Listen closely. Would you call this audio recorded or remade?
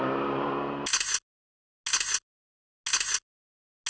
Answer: recorded